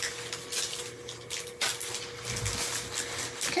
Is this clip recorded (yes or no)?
yes